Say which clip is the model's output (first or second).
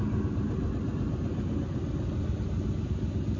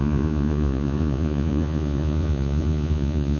second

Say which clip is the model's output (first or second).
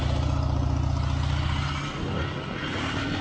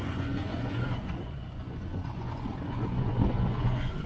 second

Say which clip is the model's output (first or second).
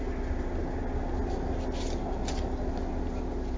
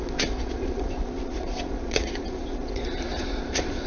second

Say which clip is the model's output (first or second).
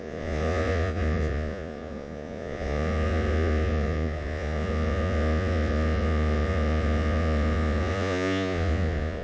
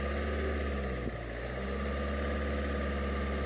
first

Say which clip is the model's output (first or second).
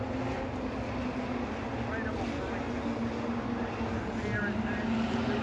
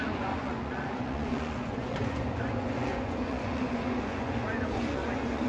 second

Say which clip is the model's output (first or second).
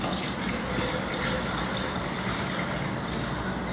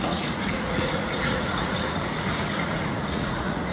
second